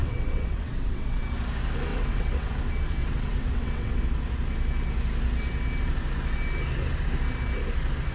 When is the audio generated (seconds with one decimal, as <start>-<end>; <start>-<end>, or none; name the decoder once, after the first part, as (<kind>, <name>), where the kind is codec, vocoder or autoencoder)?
0.0-1.2 (vocoder, WaveNeXt); 1.9-2.5; 3.0-4.0

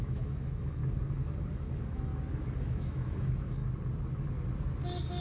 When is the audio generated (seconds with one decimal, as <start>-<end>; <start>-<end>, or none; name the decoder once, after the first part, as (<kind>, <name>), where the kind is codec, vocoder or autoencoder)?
0.0-0.8 (autoencoder, DAC-VAE); 1.5-2.1; 2.6-3.6

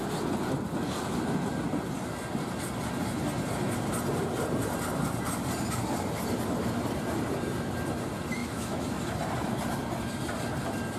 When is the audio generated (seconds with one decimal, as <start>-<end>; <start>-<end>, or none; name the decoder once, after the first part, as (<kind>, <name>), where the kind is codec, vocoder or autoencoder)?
8.4-9.0 (autoencoder, DAC-VAE)

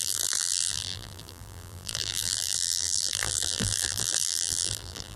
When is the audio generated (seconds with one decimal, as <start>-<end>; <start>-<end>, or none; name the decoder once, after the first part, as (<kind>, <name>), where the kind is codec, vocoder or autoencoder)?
0.0-5.2 (vocoder, BigVGAN v2)

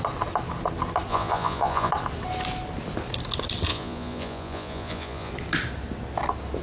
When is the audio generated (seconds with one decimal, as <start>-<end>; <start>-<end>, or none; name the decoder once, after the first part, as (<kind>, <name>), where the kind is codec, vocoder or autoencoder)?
1.1-1.9 (vocoder, Vocos); 3.7-5.3

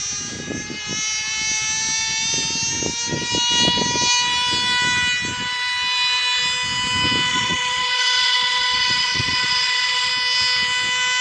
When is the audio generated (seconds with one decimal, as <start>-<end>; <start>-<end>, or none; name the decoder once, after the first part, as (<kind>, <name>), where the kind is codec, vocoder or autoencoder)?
7.3-10.1 (vocoder, Vocos)